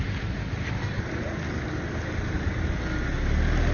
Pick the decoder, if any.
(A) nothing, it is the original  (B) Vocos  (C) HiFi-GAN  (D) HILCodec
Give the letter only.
A